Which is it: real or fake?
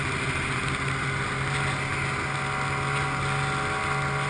real